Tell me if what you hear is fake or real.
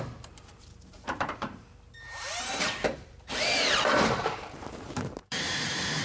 fake